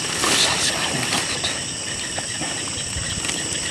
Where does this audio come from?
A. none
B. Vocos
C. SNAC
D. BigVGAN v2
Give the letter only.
A